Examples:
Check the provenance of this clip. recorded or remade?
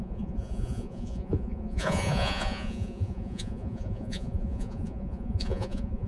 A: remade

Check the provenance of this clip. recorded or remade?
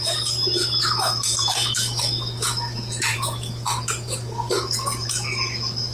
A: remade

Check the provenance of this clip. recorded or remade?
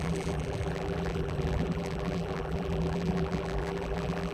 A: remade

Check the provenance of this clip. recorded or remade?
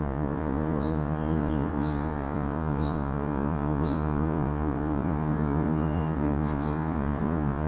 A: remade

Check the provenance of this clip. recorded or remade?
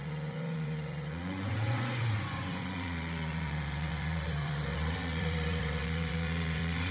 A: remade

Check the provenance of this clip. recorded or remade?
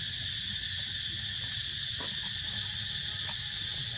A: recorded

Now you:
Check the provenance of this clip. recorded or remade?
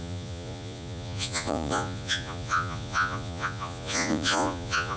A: remade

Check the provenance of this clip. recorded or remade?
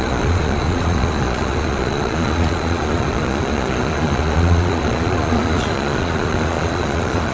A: remade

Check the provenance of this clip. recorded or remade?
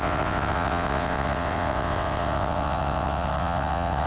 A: remade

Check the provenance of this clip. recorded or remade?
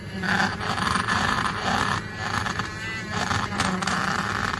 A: remade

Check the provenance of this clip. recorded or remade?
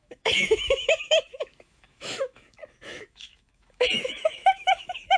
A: remade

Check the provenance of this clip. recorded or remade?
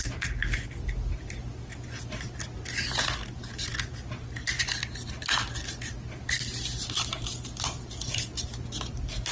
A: recorded